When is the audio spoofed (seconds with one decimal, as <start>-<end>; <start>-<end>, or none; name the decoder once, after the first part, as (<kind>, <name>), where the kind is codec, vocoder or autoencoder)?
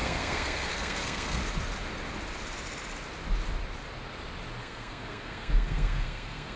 0.0-1.4 (codec, SNAC); 4.6-6.6